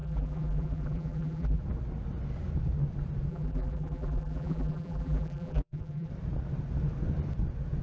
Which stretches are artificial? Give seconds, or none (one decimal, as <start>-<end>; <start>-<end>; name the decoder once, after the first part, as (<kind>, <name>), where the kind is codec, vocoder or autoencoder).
0.0-1.6 (vocoder, BigVGAN v2); 3.3-6.1